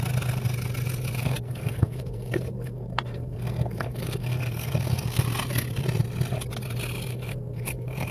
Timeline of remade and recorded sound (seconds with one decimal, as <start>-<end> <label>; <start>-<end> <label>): 0.0-1.2 recorded; 1.2-5.2 remade; 5.2-7.1 recorded; 7.1-8.1 remade